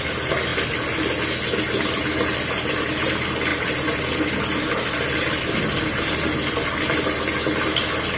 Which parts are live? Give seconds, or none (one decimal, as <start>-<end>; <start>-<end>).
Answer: 0.0-3.5; 5.5-8.2